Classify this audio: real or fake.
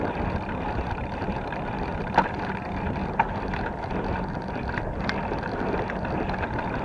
real